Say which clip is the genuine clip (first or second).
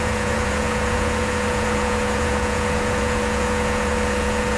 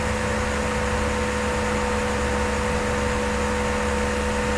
second